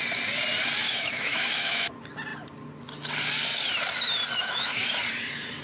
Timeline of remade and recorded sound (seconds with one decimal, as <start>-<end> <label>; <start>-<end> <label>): 0.0-0.8 recorded; 0.8-1.9 remade; 1.9-4.4 recorded; 4.4-5.0 remade; 5.0-5.6 recorded